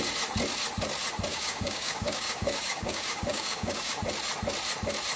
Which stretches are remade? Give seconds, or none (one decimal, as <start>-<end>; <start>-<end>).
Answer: 1.3-4.0